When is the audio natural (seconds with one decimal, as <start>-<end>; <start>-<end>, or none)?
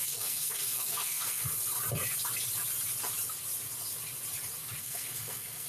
1.4-4.8